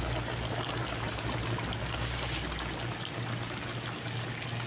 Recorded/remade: recorded